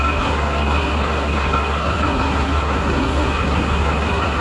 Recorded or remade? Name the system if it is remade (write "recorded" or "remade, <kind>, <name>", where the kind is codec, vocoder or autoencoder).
remade, codec, SNAC